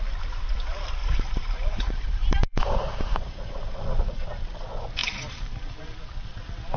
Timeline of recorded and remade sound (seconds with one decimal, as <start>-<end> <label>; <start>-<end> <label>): 0.0-1.0 recorded; 1.0-4.2 remade; 4.2-5.0 recorded; 5.0-5.7 remade; 5.7-6.8 recorded